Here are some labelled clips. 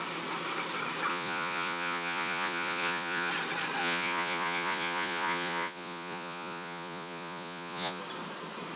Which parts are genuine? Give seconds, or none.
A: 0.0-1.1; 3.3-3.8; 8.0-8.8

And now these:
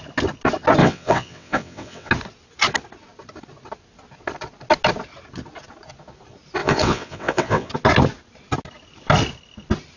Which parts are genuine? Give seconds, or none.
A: 0.0-0.8; 2.1-6.6; 7.7-10.0

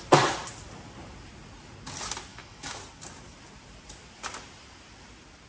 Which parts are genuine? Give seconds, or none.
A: 0.0-2.3; 2.8-5.5

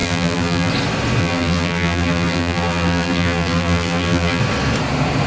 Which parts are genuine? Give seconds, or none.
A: 0.7-1.2; 4.4-5.3

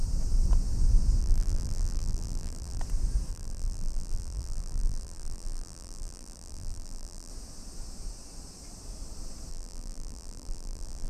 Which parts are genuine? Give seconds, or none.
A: 0.0-1.2; 2.8-3.3; 7.3-9.5

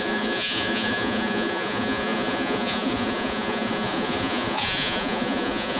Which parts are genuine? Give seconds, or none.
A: none